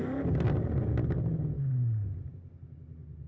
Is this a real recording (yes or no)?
yes